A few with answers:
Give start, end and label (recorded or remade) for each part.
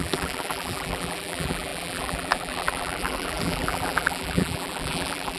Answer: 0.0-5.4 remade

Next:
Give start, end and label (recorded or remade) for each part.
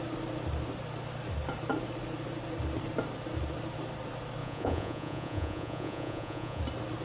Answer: 0.0-4.4 recorded; 4.4-6.6 remade; 6.6-7.0 recorded